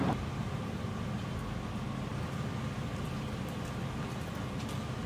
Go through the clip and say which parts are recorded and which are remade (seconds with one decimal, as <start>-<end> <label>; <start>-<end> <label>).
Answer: 0.0-5.1 recorded

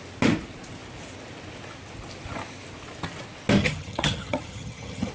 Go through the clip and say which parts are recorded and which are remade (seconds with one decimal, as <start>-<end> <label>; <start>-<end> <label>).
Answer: 0.0-3.6 recorded; 3.6-5.1 remade

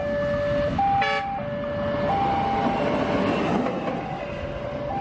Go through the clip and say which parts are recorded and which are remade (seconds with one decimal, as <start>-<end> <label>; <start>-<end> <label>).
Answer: 0.0-5.0 recorded